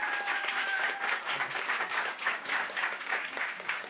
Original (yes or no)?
no